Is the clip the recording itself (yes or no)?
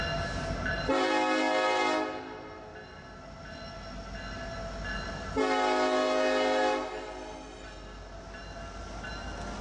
yes